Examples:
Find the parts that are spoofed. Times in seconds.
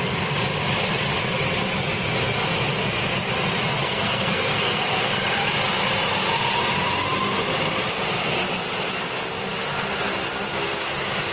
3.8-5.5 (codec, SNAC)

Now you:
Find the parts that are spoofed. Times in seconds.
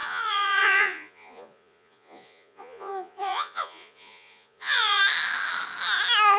0.0-5.0 (vocoder, Vocos)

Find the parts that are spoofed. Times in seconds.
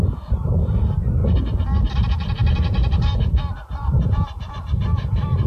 none